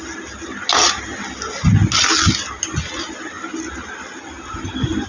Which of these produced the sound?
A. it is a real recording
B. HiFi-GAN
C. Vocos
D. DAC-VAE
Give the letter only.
A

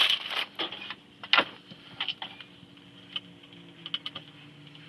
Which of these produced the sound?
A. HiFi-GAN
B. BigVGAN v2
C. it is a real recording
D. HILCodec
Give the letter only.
C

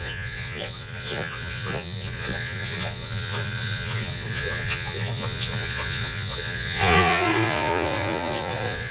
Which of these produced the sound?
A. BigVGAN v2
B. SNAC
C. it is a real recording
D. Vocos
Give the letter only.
D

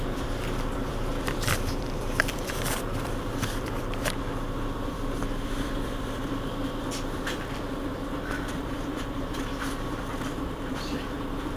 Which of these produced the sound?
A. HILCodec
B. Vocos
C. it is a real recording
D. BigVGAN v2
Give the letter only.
D